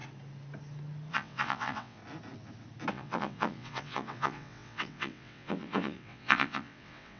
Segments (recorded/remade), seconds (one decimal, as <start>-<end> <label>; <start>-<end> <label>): 0.0-1.1 recorded; 1.1-2.0 remade; 2.0-2.9 recorded; 2.9-7.2 remade